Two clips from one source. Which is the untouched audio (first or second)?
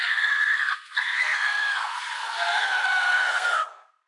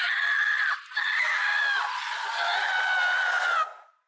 second